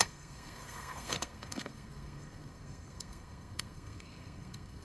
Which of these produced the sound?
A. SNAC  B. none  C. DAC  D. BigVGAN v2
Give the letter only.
A